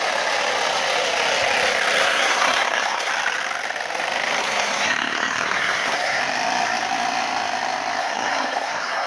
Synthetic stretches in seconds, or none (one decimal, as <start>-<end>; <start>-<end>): 2.0-3.1; 4.4-6.2; 8.0-9.1